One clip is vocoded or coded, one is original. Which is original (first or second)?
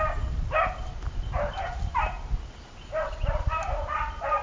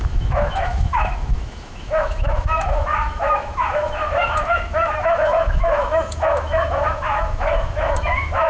first